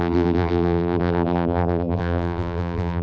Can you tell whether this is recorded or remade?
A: remade